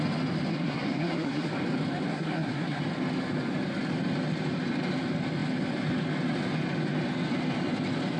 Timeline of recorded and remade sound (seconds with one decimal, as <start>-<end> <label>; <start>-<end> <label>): 0.0-0.5 recorded; 0.5-1.5 remade; 1.5-2.1 recorded; 2.1-2.8 remade; 2.8-8.2 recorded